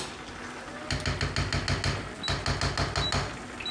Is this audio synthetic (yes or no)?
no